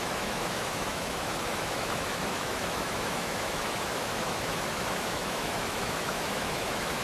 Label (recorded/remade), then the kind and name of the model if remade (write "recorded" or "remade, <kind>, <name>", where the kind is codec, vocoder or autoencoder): remade, autoencoder, DAC-VAE